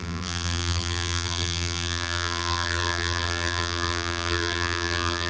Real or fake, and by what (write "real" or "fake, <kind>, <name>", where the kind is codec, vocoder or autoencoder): fake, vocoder, BigVGAN v2